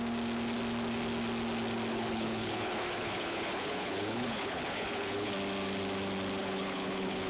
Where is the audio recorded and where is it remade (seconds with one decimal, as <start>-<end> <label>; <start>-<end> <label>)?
0.0-1.9 recorded; 1.9-5.3 remade; 5.3-6.4 recorded; 6.4-7.3 remade